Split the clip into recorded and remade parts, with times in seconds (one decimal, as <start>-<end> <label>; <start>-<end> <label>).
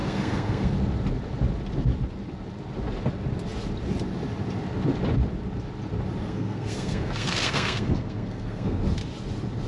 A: 0.0-0.7 remade; 0.7-6.2 recorded; 6.2-8.8 remade; 8.8-9.7 recorded